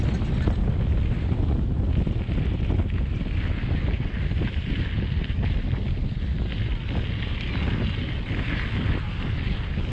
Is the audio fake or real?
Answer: real